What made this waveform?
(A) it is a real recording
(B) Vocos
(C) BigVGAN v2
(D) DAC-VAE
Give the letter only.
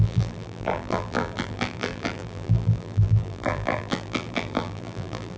C